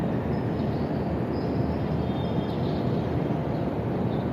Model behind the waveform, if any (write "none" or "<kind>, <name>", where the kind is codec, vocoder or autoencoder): none